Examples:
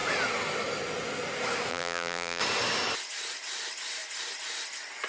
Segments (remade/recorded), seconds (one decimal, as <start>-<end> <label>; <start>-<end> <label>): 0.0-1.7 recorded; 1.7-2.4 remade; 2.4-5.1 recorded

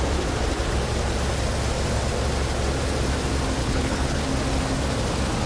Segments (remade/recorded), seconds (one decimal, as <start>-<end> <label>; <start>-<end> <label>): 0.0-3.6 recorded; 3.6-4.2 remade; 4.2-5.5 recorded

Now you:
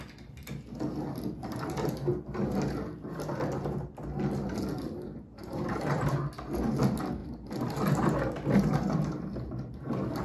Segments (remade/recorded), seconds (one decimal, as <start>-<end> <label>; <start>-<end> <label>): 0.0-5.4 recorded; 5.4-6.1 remade; 6.1-10.2 recorded

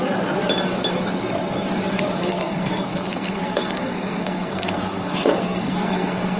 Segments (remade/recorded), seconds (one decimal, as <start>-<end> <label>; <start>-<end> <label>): 0.0-2.3 recorded; 2.3-6.4 remade